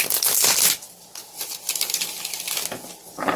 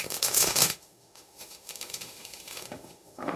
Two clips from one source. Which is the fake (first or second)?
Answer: second